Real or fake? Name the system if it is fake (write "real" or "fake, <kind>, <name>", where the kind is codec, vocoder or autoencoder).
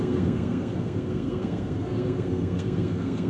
fake, codec, SNAC